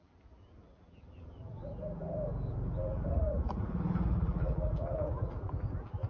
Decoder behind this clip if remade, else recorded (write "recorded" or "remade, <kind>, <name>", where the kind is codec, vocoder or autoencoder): remade, vocoder, BigVGAN v2